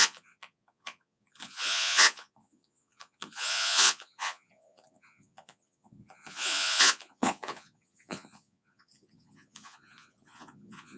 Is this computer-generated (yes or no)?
yes